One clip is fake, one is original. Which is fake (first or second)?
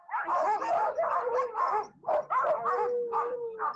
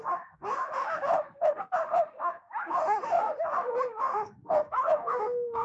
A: second